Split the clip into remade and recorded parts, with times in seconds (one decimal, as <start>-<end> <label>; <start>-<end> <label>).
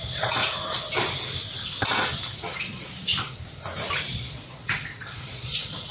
0.0-0.4 remade; 0.4-2.4 recorded; 2.4-3.1 remade; 3.1-4.1 recorded; 4.1-5.9 remade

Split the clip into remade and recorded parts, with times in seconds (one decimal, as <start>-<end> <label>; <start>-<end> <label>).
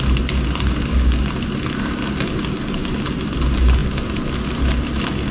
0.0-5.3 recorded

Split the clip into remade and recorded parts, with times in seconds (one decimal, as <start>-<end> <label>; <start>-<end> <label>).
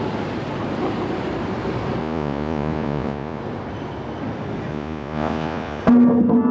0.0-2.0 recorded; 2.0-3.4 remade; 3.4-4.7 recorded; 4.7-5.8 remade; 5.8-6.5 recorded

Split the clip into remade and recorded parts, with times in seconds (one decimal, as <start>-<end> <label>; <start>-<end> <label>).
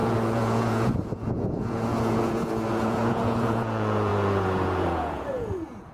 0.0-5.9 remade